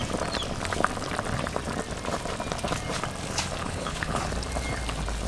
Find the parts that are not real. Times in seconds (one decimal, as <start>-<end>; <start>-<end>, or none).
3.6-4.2

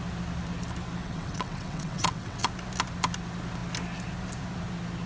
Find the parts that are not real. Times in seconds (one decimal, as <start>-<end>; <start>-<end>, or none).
1.0-2.5

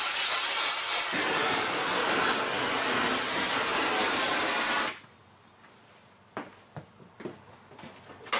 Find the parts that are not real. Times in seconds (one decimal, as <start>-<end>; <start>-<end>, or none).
3.7-4.5

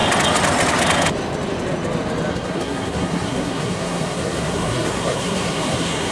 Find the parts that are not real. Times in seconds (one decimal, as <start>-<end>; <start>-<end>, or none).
2.3-6.1

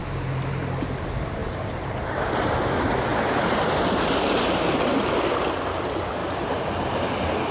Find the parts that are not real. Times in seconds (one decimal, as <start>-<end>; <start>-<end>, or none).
1.4-1.9; 6.2-6.9